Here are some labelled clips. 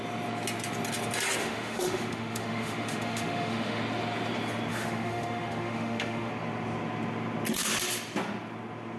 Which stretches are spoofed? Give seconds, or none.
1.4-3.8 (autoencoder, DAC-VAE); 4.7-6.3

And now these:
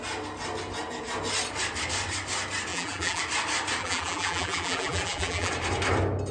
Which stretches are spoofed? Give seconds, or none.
2.7-3.2 (vocoder, BigVGAN v2); 3.8-5.5

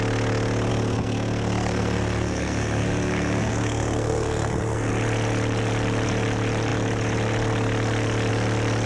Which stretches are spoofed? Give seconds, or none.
0.7-4.9 (codec, SNAC)

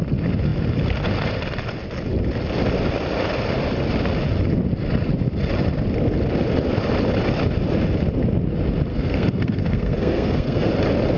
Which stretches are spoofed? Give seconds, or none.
8.9-10.7 (codec, SNAC)

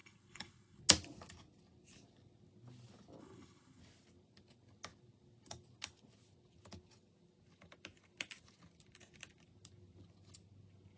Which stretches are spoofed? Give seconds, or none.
0.0-0.8 (codec, HILCodec); 3.2-3.8

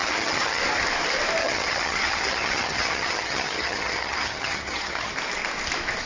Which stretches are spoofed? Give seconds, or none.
0.0-0.6 (vocoder, HiFi-GAN); 1.4-5.1